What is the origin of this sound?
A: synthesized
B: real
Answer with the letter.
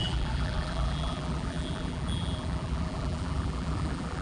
A